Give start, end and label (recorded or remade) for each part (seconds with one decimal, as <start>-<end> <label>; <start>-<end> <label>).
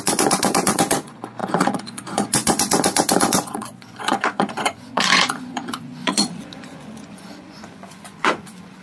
0.0-8.8 remade